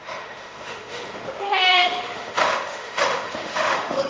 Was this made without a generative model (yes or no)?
no